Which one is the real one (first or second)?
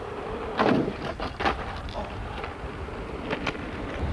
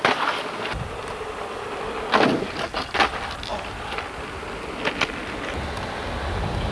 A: second